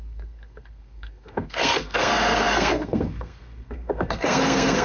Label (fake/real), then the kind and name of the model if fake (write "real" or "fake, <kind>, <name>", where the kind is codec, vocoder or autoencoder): fake, codec, SNAC